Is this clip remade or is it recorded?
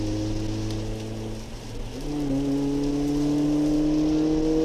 recorded